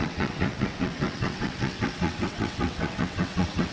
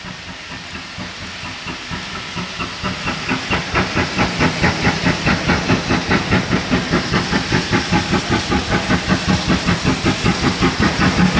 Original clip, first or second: second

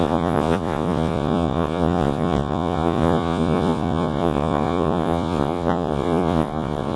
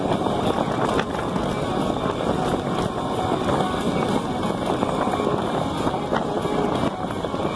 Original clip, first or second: second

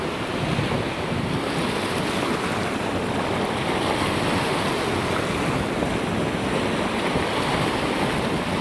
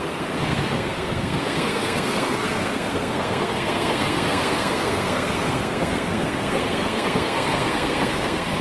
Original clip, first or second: first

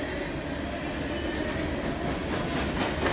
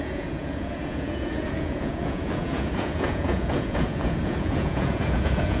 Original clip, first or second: first